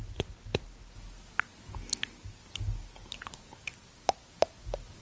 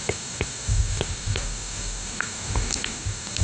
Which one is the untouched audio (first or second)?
first